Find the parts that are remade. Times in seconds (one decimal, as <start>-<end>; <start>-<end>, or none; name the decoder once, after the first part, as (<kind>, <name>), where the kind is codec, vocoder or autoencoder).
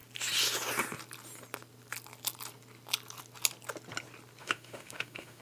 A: 4.4-5.4 (autoencoder, DAC-VAE)